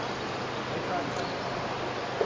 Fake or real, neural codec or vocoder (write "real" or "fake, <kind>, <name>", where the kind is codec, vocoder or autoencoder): real